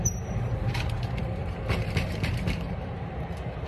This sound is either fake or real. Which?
fake